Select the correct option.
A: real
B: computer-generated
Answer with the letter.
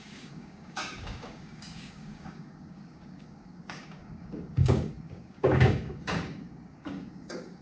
B